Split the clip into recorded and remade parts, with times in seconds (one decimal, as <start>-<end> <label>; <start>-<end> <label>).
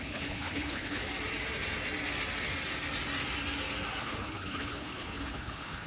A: 0.0-1.0 remade; 1.0-4.0 recorded; 4.0-5.9 remade